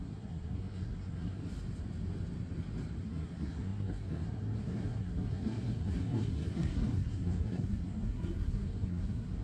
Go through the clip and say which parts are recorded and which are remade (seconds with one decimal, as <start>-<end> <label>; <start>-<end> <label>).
0.0-1.4 remade; 1.4-3.0 recorded; 3.0-9.4 remade